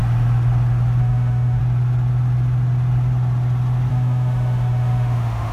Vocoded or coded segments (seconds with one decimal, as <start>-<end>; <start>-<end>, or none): 1.0-1.6; 3.9-5.5

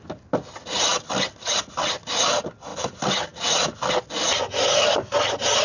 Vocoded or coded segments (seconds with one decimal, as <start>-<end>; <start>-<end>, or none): 2.7-3.9